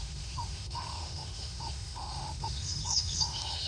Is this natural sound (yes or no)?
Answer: no